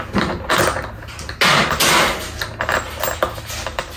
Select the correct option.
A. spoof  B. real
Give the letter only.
B